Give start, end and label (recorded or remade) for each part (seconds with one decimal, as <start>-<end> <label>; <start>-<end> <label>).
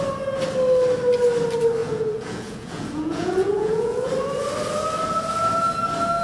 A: 0.0-1.8 recorded; 1.8-4.1 remade; 4.1-6.2 recorded